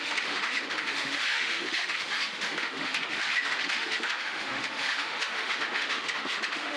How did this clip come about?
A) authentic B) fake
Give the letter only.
B